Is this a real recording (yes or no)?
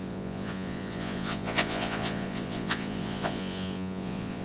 no